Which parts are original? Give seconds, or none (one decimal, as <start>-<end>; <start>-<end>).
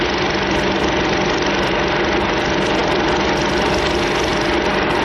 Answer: 0.0-5.0